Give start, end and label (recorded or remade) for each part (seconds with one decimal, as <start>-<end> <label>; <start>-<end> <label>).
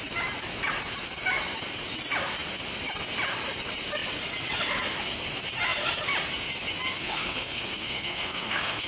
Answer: 0.0-6.9 recorded; 6.9-8.9 remade